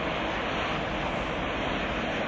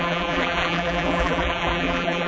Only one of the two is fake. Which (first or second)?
second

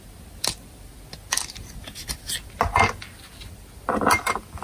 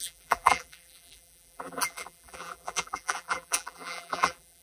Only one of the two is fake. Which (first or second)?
second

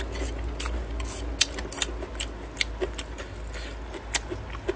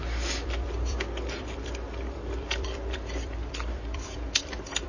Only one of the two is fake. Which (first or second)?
second